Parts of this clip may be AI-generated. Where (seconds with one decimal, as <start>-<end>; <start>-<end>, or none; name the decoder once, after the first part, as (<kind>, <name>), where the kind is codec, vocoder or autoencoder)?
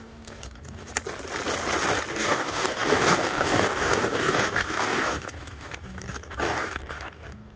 0.0-0.9 (codec, DAC); 2.1-7.6